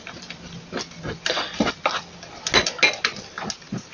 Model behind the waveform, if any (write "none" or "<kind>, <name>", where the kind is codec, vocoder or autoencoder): none